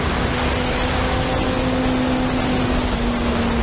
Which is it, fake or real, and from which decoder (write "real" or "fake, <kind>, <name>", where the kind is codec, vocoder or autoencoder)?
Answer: real